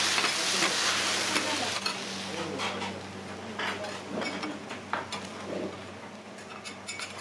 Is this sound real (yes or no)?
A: yes